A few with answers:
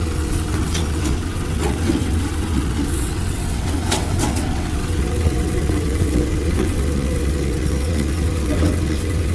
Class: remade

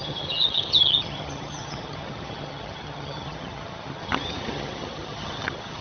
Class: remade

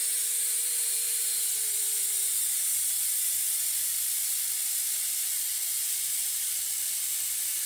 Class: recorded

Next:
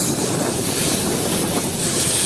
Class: remade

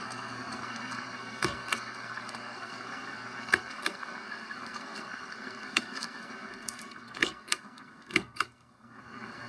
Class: remade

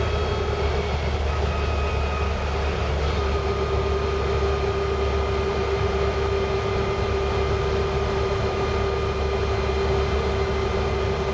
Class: recorded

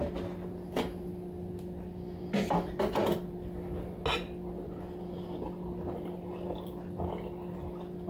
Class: recorded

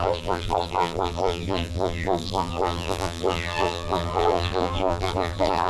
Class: remade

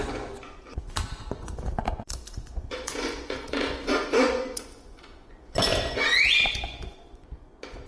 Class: remade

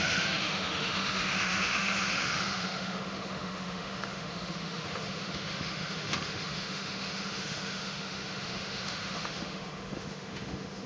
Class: remade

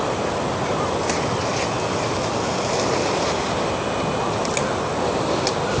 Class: recorded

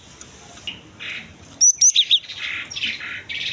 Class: recorded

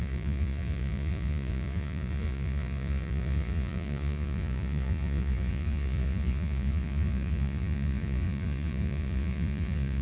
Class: remade